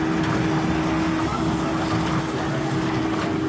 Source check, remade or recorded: recorded